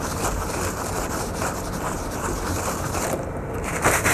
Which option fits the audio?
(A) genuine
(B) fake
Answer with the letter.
B